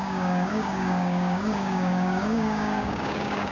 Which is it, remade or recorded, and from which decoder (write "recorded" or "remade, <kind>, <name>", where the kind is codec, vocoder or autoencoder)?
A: remade, codec, DAC